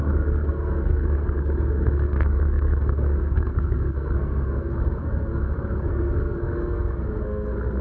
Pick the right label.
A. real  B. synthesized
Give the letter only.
B